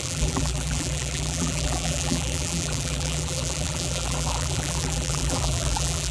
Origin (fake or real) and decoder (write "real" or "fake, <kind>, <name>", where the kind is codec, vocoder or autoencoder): fake, vocoder, BigVGAN v2